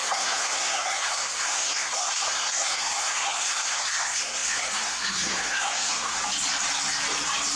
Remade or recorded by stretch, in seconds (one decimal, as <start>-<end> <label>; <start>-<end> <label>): 0.0-6.2 remade; 6.2-7.6 recorded